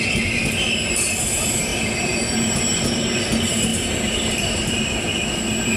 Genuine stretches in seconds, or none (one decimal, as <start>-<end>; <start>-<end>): 0.0-1.7; 2.6-3.7; 4.8-5.8